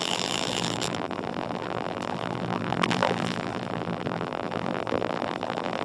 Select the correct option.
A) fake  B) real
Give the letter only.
A